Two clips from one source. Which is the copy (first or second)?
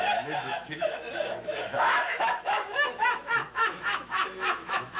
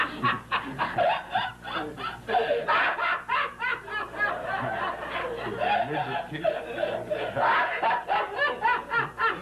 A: first